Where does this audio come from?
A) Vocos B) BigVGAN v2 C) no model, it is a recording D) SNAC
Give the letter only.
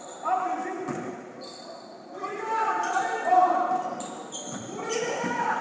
B